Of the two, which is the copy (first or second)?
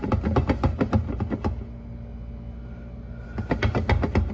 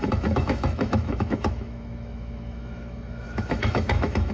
second